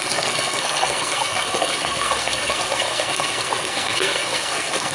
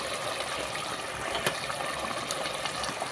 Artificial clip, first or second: first